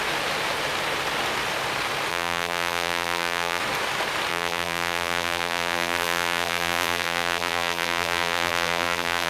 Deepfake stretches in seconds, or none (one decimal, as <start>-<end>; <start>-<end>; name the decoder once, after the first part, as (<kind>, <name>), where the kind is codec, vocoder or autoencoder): 2.1-3.6 (vocoder, BigVGAN v2); 4.3-9.3